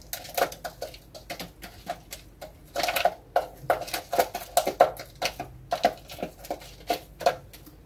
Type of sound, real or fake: real